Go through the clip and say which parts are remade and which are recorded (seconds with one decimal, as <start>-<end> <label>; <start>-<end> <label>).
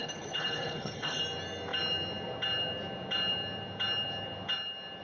0.0-1.2 remade; 1.2-5.0 recorded